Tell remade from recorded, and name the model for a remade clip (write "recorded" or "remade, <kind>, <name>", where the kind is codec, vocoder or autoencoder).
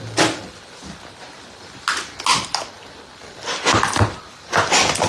recorded